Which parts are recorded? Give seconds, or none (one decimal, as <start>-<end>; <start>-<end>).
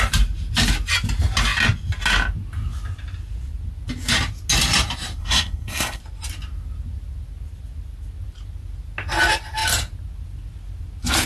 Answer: 0.0-5.2; 6.0-11.3